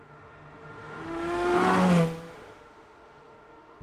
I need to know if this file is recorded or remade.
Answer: remade